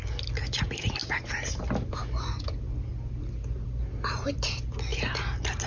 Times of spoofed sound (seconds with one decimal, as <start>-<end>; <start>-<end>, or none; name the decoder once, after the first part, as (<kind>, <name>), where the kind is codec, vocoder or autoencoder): 1.0-1.6 (vocoder, BigVGAN v2)